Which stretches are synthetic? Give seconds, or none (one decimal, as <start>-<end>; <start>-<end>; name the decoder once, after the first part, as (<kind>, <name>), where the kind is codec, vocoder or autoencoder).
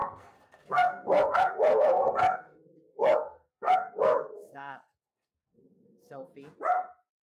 0.0-6.3 (codec, SNAC)